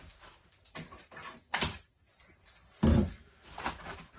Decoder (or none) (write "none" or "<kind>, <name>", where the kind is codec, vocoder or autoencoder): none